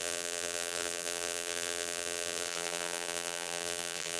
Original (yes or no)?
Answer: no